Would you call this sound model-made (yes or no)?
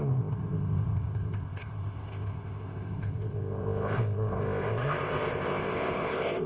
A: yes